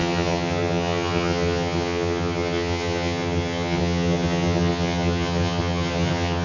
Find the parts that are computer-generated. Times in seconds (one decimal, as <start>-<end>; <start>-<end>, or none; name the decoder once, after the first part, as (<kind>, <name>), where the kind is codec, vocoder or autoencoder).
0.0-6.4 (vocoder, HiFi-GAN)